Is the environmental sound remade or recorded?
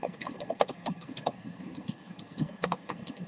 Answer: remade